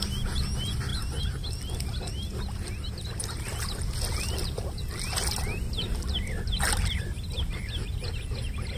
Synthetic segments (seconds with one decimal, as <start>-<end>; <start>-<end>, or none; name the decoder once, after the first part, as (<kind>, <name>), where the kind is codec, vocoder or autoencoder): 0.9-1.5 (vocoder, BigVGAN v2)